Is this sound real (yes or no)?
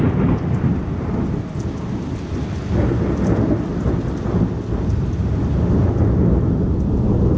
yes